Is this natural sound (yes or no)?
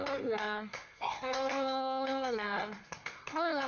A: no